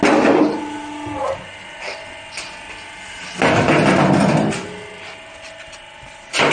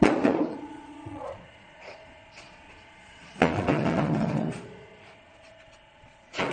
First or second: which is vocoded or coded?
second